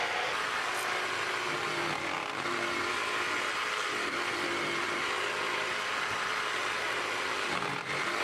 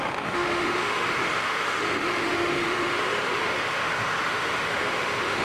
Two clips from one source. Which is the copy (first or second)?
second